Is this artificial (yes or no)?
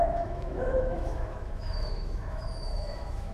yes